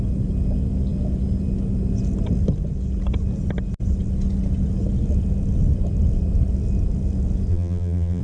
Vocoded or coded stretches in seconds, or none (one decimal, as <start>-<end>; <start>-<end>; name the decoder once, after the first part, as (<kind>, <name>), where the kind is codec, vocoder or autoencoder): 7.5-8.2 (vocoder, BigVGAN v2)